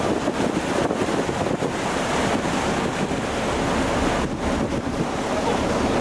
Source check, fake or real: real